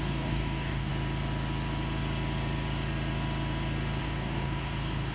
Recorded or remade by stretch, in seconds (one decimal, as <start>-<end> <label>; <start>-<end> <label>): 0.0-0.9 remade; 0.9-4.0 recorded; 4.0-5.1 remade